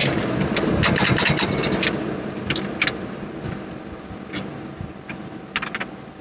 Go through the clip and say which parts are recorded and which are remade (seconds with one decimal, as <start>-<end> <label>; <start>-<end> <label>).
0.0-6.2 recorded